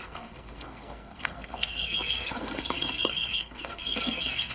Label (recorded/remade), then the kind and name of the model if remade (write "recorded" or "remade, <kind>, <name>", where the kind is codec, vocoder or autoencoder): remade, codec, SNAC